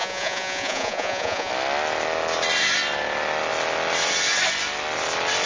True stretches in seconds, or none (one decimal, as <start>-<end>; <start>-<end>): 1.5-5.5